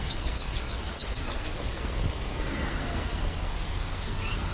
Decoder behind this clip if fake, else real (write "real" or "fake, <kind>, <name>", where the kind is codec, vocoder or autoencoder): fake, codec, SNAC